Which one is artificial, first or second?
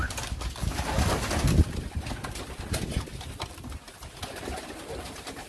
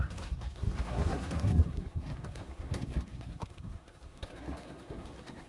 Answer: second